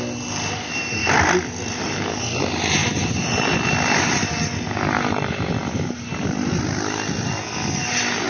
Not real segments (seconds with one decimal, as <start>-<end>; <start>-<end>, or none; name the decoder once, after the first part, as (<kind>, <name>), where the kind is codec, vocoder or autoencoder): 2.8-3.7 (vocoder, BigVGAN v2); 5.6-6.6